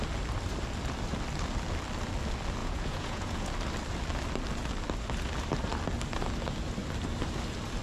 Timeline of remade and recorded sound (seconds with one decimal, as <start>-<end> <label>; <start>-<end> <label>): 0.0-2.6 recorded; 2.6-3.5 remade; 3.5-7.8 recorded